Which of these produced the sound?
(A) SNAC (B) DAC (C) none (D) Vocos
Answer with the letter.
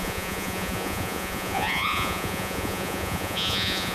D